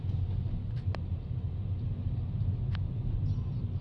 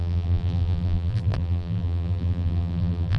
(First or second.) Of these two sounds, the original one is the first